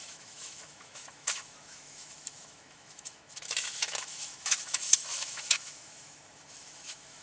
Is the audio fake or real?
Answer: fake